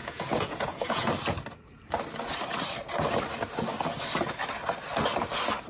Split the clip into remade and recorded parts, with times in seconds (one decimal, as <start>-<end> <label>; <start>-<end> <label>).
0.0-1.1 remade; 1.1-5.7 recorded

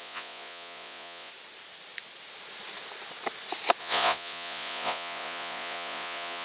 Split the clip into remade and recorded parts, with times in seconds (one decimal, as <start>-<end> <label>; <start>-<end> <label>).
0.0-1.3 remade; 1.3-3.8 recorded; 3.8-6.4 remade

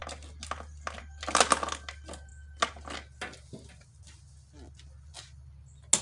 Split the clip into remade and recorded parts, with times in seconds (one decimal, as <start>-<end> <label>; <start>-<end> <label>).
0.0-6.0 recorded

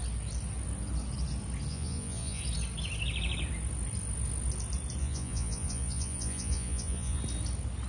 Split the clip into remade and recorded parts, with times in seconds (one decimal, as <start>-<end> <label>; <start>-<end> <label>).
0.0-1.7 recorded; 1.7-2.4 remade; 2.4-5.0 recorded; 5.0-7.2 remade; 7.2-7.9 recorded

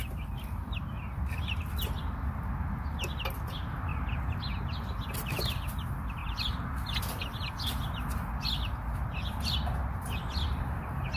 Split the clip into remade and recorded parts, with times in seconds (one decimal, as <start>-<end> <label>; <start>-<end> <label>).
0.0-11.2 recorded

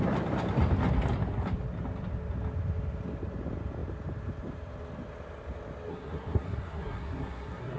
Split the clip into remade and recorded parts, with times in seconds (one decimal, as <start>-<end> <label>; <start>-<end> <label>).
0.0-5.9 recorded; 5.9-7.8 remade